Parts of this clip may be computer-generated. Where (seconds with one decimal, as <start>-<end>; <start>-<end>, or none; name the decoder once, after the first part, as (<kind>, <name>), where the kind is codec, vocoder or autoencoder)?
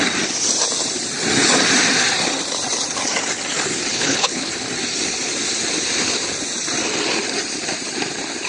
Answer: 3.9-4.5 (codec, HILCodec)